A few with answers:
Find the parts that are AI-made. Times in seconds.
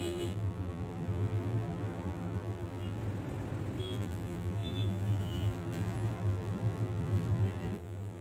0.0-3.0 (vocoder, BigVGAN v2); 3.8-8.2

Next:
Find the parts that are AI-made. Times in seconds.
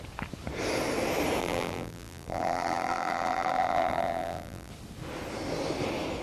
1.4-4.7 (vocoder, BigVGAN v2)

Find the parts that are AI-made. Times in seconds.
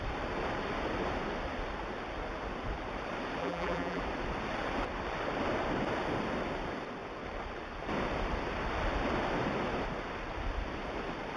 3.4-4.0 (vocoder, BigVGAN v2)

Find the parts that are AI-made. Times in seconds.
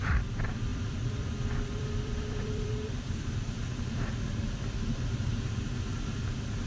0.7-3.5 (vocoder, BigVGAN v2)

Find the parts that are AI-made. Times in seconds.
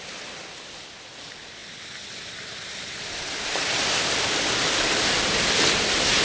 1.6-5.3 (vocoder, BigVGAN v2)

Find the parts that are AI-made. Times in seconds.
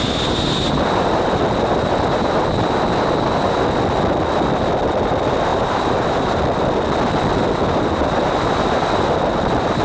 5.5-6.4 (vocoder, BigVGAN v2)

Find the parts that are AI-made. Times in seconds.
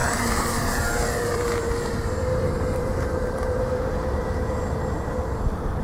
0.0-5.8 (vocoder, BigVGAN v2)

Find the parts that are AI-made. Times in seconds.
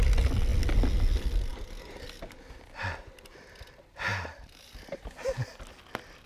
4.1-4.8 (vocoder, BigVGAN v2)